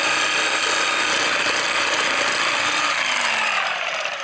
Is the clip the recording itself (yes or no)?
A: yes